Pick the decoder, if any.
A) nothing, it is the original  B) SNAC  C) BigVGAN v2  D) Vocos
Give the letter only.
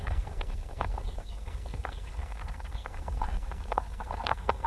B